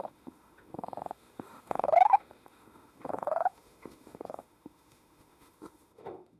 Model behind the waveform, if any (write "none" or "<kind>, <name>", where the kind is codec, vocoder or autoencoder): autoencoder, DAC-VAE